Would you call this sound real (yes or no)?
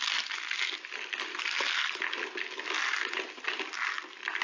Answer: yes